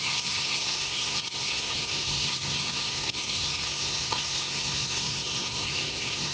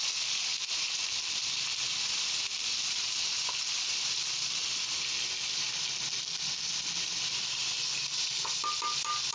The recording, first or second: second